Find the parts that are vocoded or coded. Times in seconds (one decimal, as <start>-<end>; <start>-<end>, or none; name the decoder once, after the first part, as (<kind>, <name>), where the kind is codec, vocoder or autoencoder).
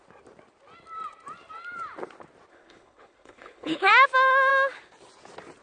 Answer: 2.5-3.9 (codec, HILCodec)